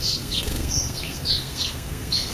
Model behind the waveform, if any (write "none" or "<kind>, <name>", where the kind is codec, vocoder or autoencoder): codec, SNAC